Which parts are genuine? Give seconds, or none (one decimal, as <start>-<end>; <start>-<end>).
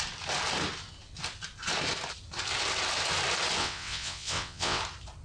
0.0-3.6; 4.8-5.2